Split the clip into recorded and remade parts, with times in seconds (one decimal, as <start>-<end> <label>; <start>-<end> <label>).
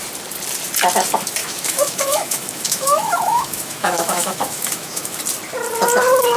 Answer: 0.0-1.4 recorded; 1.4-5.2 remade; 5.2-6.4 recorded